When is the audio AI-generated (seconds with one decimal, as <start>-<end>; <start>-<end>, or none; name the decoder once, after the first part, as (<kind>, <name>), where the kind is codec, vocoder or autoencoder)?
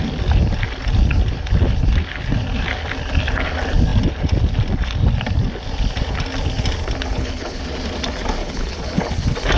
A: 7.1-7.6 (codec, HILCodec); 8.4-9.1